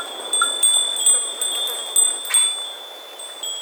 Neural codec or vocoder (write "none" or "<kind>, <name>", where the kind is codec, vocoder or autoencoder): none